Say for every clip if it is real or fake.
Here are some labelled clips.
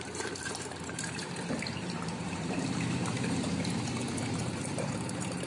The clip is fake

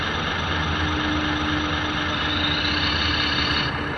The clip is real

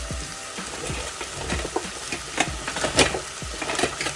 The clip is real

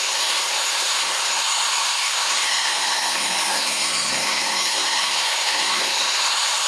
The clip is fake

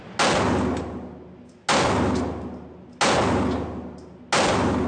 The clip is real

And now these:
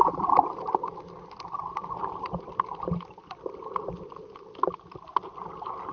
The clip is real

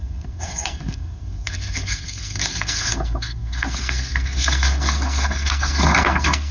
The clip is fake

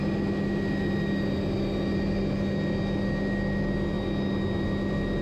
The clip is real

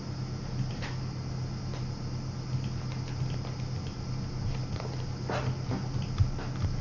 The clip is real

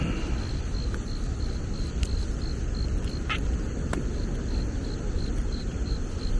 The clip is real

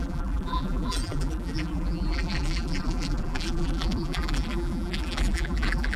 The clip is fake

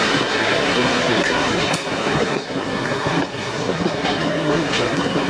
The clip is fake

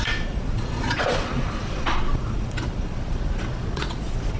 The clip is fake